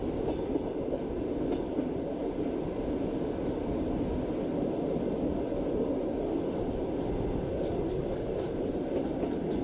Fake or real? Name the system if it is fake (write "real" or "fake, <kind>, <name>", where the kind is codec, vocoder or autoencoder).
real